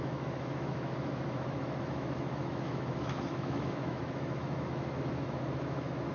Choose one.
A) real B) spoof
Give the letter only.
B